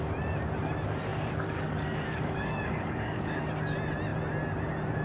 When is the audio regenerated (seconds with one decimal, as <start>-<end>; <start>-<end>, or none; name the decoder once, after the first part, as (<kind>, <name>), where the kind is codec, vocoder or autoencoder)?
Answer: 1.1-3.4 (codec, DAC)